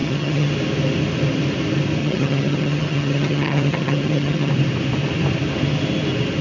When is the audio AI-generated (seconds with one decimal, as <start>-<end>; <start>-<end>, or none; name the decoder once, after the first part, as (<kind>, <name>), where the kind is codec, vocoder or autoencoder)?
0.0-0.5 (vocoder, HiFi-GAN); 2.0-4.5